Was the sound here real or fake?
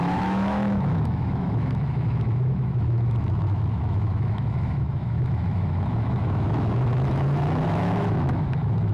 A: fake